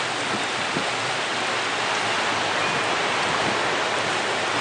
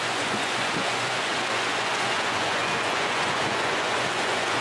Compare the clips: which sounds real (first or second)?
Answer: first